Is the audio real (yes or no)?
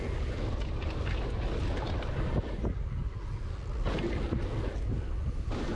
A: yes